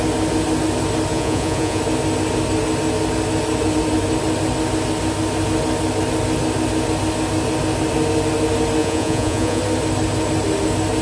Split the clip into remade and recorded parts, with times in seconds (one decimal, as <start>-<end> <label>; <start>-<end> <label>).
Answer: 0.0-1.1 recorded; 1.1-1.8 remade; 1.8-8.8 recorded; 8.8-9.6 remade; 9.6-11.0 recorded

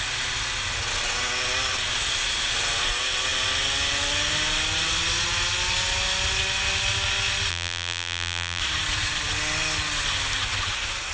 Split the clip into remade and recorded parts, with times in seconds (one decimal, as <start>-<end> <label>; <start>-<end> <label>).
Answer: 0.0-7.5 recorded; 7.5-8.6 remade; 8.6-11.1 recorded